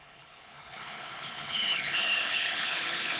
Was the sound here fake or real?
fake